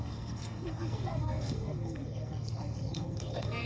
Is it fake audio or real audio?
fake